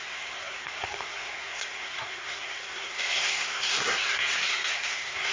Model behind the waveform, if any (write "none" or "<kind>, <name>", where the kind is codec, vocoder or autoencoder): codec, SNAC